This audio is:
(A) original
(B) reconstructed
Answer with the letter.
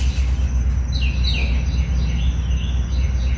A